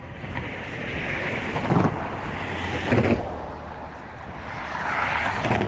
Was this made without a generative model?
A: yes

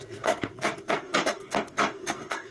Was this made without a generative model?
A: no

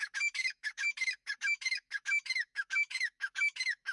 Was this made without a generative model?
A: no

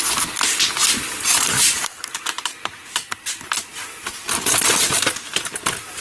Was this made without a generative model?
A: yes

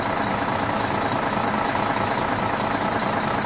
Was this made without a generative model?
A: yes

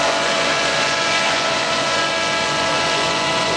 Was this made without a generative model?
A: no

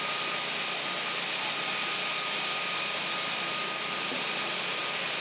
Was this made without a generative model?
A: yes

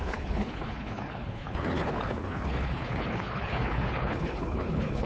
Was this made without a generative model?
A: no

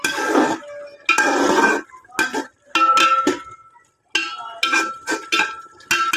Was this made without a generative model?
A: yes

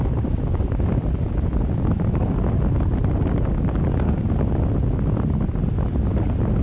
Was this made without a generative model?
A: yes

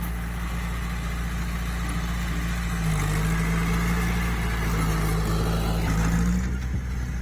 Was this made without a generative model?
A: yes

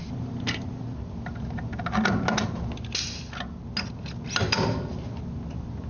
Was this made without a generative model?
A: yes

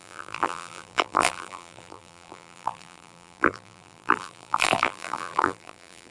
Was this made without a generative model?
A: no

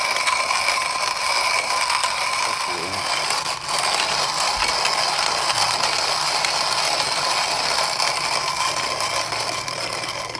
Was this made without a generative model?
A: yes